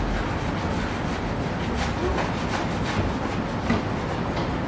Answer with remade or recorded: recorded